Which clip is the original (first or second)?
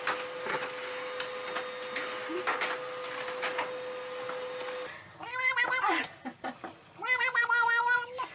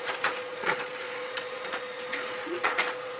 first